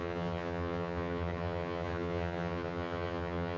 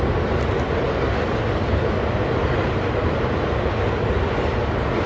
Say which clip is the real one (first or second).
second